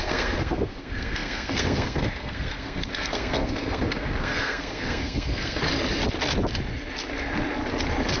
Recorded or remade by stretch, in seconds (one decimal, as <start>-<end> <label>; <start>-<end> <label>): 0.0-5.6 remade; 5.6-8.2 recorded